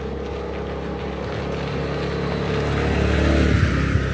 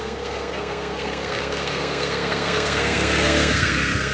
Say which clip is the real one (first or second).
first